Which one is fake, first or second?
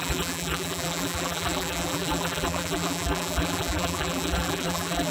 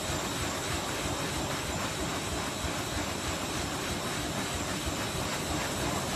first